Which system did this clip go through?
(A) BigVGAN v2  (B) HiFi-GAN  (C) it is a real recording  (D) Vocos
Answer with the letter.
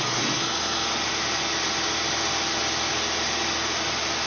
C